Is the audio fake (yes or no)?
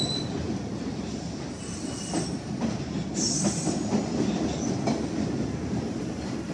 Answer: no